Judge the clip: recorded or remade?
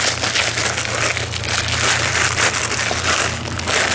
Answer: recorded